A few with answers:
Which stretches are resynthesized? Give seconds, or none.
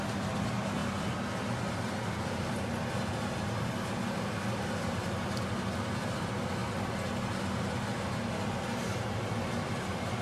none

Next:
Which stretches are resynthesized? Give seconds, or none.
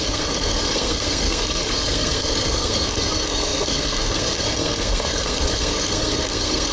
0.0-6.7 (codec, SNAC)